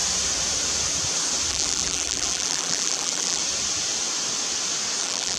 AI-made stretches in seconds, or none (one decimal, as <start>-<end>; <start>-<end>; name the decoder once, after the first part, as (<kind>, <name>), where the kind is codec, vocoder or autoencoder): 1.5-3.4 (vocoder, BigVGAN v2); 5.0-5.4